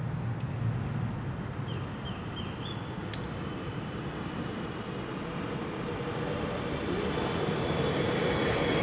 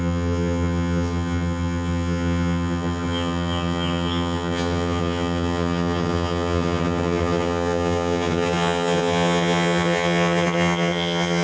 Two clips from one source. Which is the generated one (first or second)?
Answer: second